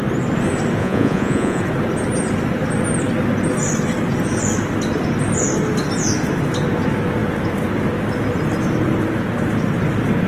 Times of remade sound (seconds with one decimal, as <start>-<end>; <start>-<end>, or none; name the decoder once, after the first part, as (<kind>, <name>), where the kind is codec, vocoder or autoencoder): 0.8-1.6 (vocoder, Vocos)